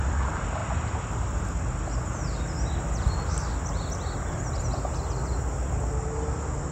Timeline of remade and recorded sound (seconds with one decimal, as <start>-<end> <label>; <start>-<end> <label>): 0.0-6.7 recorded